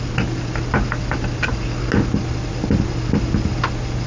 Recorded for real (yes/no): yes